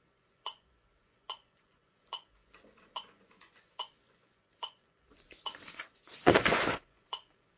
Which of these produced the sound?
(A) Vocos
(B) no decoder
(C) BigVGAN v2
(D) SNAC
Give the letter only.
A